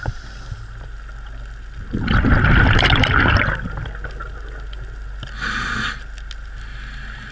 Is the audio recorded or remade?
recorded